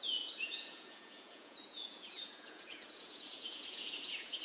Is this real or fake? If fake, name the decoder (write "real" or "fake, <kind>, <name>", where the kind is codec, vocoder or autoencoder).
fake, vocoder, Vocos